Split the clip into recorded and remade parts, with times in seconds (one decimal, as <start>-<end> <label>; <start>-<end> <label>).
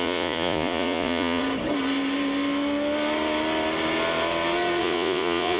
0.0-1.4 remade; 1.4-4.8 recorded; 4.8-5.6 remade